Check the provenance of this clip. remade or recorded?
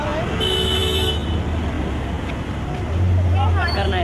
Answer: recorded